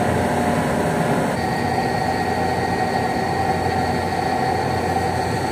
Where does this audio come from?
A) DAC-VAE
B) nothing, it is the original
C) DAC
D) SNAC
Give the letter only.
B